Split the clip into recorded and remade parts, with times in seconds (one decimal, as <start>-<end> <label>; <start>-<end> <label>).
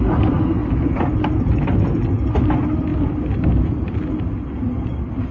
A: 0.0-5.3 recorded